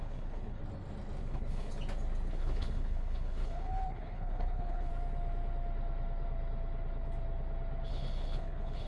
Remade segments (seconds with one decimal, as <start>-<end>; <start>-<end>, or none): 0.0-0.6; 1.2-1.7; 2.3-4.9; 7.9-8.9